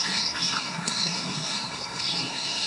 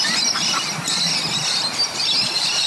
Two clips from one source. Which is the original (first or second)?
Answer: second